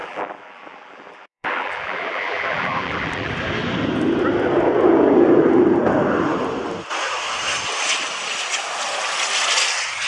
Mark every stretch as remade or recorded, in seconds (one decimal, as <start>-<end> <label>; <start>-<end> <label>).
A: 0.0-3.3 remade; 3.3-10.1 recorded